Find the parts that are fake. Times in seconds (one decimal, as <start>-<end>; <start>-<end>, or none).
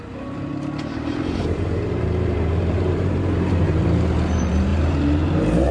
0.0-0.5; 1.4-5.7